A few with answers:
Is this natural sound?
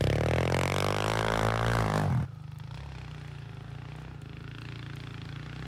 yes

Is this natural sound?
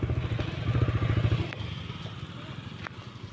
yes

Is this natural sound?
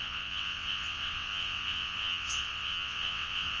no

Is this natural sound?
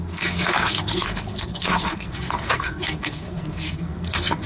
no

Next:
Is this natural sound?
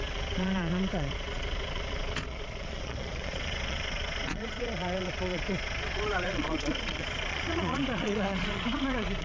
no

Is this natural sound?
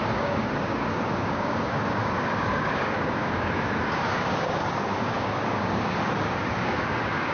no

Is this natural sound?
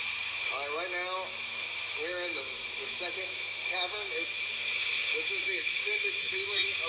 no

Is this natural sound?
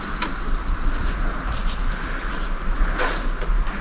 yes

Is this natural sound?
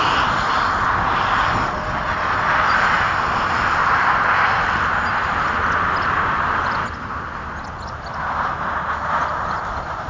yes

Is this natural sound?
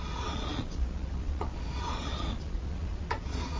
no